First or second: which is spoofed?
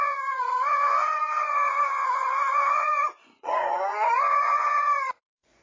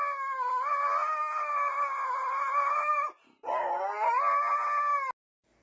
first